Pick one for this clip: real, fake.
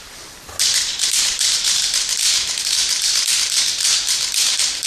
fake